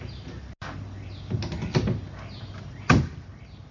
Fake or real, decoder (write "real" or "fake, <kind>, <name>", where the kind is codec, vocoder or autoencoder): real